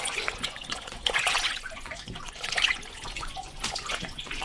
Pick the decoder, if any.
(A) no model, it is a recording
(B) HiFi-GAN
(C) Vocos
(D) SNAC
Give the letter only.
C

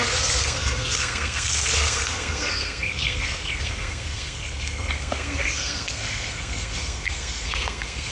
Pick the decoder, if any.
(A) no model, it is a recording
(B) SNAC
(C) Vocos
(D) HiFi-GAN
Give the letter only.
B